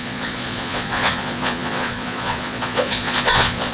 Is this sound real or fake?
fake